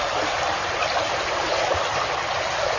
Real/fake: real